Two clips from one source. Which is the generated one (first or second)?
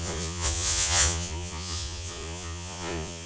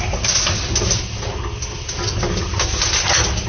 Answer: first